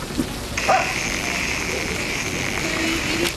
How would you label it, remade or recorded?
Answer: recorded